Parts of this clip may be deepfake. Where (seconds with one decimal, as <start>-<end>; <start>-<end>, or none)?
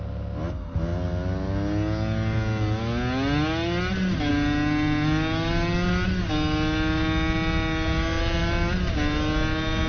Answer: none